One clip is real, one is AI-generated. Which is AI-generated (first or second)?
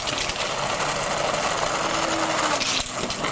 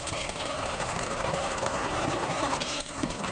second